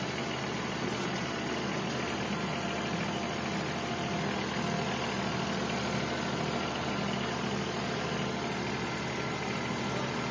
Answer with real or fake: real